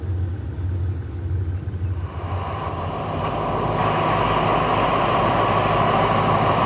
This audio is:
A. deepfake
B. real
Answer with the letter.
B